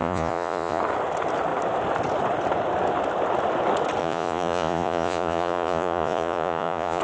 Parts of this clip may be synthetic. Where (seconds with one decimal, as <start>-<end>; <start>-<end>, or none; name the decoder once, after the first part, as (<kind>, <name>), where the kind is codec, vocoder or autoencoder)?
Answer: 0.0-0.8 (vocoder, Vocos); 4.0-7.0